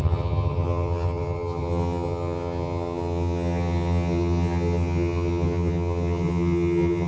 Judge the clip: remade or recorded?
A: remade